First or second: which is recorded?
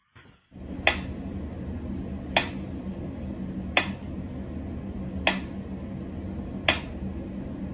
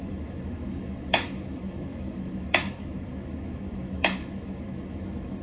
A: first